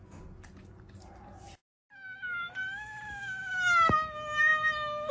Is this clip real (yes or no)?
yes